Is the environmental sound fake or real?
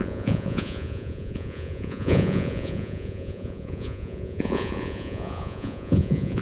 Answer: fake